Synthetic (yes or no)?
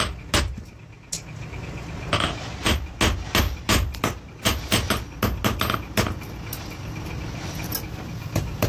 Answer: no